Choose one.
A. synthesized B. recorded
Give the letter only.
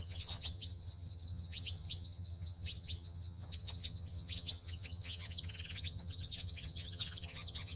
A